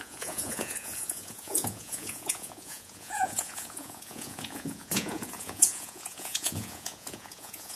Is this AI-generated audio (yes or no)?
yes